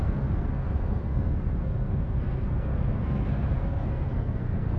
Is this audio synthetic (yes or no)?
yes